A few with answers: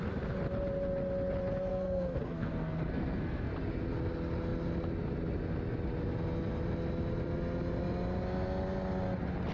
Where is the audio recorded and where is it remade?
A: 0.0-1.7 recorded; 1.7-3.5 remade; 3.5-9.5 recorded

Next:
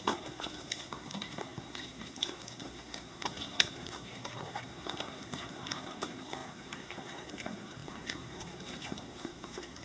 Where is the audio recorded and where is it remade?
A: 0.0-9.8 remade

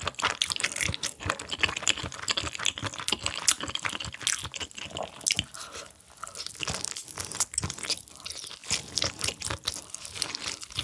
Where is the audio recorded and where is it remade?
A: 0.0-10.8 recorded

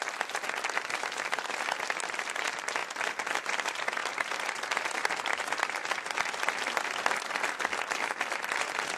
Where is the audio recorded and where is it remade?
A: 0.0-9.0 recorded

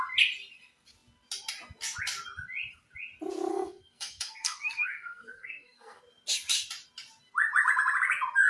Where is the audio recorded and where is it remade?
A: 0.0-3.5 recorded; 3.5-6.0 remade; 6.0-8.5 recorded